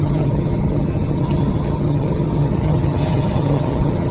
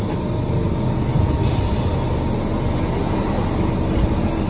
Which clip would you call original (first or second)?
second